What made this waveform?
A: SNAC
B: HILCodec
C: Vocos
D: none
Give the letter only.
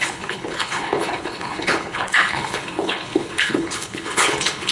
B